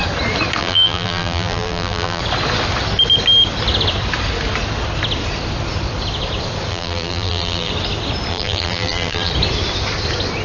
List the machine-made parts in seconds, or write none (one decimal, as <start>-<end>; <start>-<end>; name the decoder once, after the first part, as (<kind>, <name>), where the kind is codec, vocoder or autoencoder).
0.6-2.2 (vocoder, BigVGAN v2); 6.7-7.7; 8.3-9.3